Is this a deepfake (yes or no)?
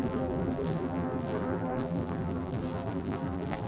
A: yes